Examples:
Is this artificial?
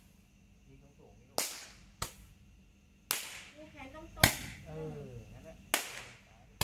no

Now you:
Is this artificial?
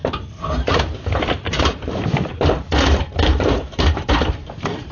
yes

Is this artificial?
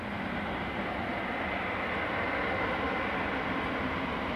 no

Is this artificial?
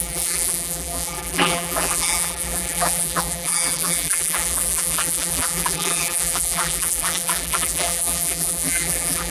yes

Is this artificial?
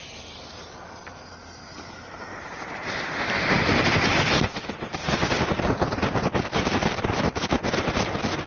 yes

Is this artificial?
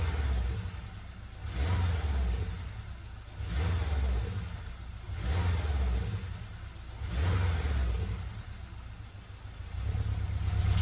no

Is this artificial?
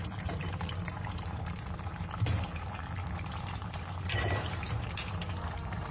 yes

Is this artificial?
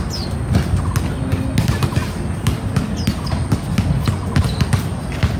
no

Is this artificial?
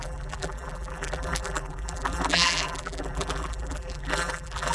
yes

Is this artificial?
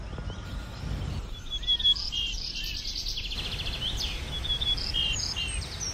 no